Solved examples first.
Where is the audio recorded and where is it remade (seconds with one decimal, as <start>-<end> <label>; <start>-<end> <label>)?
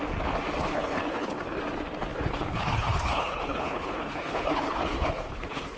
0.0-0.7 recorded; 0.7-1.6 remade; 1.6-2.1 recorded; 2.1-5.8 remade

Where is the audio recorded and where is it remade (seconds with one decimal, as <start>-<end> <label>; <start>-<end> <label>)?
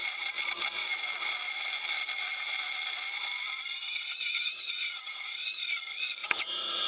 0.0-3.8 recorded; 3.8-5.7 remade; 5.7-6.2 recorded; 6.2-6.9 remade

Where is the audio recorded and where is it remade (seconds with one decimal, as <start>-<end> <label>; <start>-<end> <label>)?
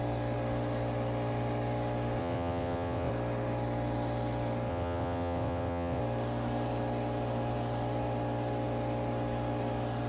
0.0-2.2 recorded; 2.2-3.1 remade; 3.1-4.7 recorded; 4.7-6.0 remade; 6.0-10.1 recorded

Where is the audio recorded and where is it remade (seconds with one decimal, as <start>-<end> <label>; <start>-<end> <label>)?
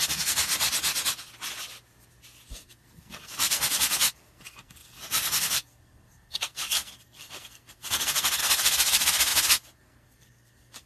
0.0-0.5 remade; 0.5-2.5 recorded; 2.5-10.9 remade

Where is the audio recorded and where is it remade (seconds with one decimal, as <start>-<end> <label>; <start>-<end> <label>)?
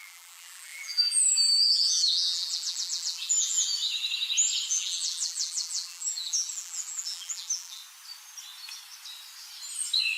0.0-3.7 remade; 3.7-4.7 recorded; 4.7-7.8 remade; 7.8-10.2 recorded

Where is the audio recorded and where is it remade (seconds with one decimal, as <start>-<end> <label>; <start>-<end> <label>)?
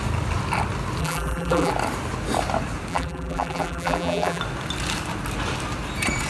0.0-1.0 recorded; 1.0-1.7 remade; 1.7-2.9 recorded; 2.9-4.4 remade; 4.4-6.3 recorded